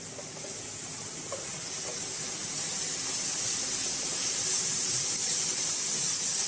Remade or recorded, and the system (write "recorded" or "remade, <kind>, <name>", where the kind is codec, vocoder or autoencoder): recorded